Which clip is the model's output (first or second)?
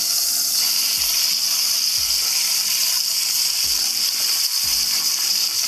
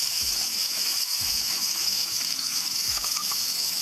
second